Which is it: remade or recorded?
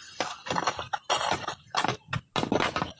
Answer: recorded